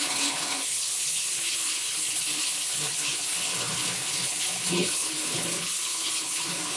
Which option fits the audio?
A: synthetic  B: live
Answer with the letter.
A